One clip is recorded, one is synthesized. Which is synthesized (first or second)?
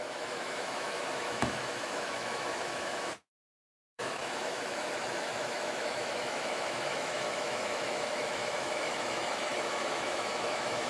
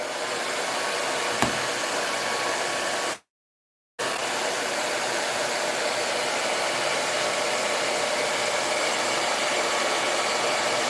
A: first